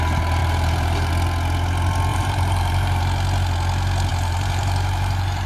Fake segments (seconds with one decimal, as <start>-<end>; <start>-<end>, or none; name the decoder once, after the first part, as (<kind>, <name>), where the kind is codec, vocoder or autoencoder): 0.4-1.1 (vocoder, BigVGAN v2); 2.1-3.0; 4.1-5.5